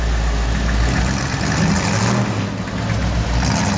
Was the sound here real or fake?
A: real